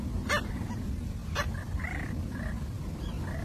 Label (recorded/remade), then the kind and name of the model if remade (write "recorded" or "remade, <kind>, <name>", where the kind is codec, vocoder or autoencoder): recorded